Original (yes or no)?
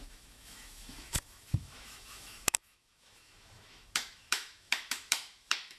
no